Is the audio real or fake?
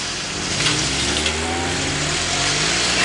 real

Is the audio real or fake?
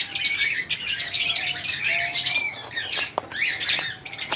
real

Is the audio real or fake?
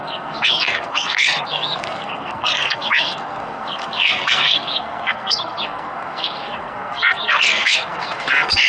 fake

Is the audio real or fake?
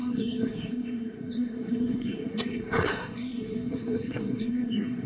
fake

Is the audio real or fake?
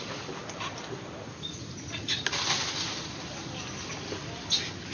real